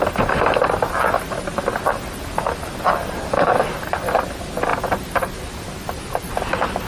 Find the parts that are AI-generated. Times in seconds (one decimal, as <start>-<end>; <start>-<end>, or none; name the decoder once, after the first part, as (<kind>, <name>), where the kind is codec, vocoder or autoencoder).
none